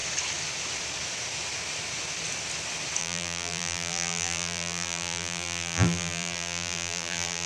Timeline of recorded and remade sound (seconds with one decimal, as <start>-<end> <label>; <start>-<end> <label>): 0.0-3.0 recorded; 3.0-7.5 remade